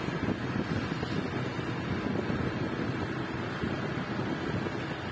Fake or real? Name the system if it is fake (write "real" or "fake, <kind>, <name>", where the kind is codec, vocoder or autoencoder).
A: real